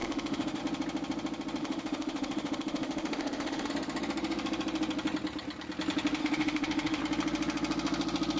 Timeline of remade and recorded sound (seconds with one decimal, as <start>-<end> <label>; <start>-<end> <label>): 0.0-0.6 remade; 0.6-1.6 recorded; 1.6-3.7 remade; 3.7-6.2 recorded; 6.2-7.0 remade; 7.0-8.4 recorded